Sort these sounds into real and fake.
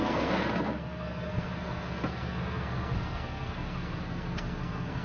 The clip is fake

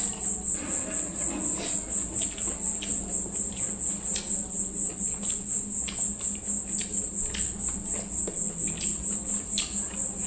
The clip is real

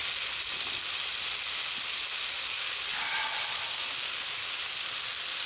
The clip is real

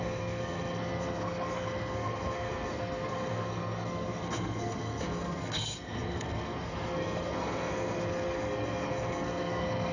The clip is fake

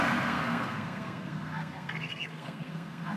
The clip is fake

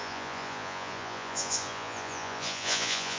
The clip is fake